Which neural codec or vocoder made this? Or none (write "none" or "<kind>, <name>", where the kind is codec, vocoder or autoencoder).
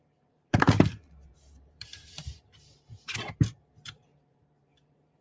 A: vocoder, BigVGAN v2